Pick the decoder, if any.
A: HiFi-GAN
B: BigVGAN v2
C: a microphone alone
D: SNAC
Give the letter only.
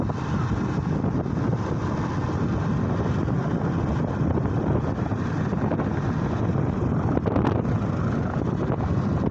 C